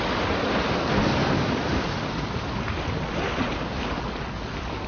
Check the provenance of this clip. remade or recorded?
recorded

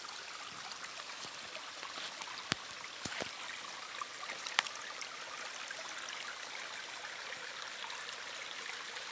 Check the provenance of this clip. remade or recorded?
recorded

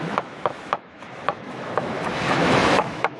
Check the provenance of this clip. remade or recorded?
remade